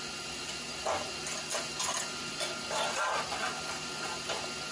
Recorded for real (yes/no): yes